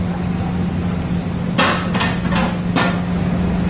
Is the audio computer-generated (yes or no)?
no